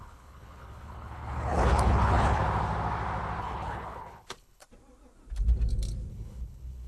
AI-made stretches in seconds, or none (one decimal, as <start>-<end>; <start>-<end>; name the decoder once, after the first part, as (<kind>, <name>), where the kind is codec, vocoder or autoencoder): 0.0-2.4 (codec, HILCodec); 3.4-4.6; 6.1-6.9